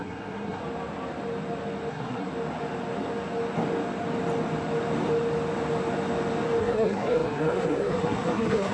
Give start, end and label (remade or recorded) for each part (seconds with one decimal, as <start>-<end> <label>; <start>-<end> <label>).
0.0-0.6 remade; 0.6-1.9 recorded; 1.9-2.3 remade; 2.3-6.6 recorded; 6.6-8.7 remade